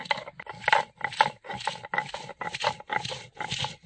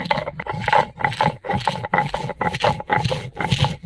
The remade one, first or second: second